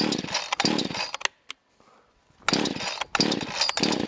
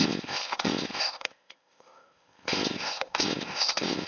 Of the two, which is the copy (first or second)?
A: second